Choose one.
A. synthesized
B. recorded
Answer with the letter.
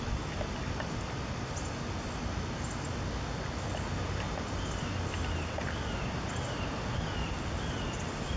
B